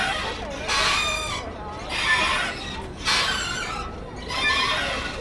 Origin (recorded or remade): recorded